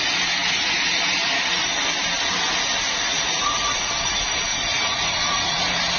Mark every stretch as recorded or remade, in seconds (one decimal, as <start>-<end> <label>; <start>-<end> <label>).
0.0-3.1 recorded; 3.1-3.9 remade; 3.9-4.5 recorded; 4.5-5.6 remade; 5.6-6.0 recorded